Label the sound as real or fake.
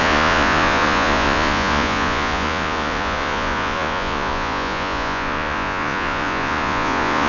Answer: fake